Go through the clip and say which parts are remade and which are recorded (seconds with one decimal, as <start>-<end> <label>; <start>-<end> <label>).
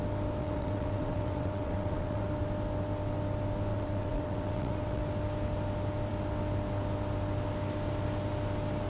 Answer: 0.0-0.4 recorded; 0.4-2.2 remade; 2.2-3.7 recorded; 3.7-5.0 remade; 5.0-8.9 recorded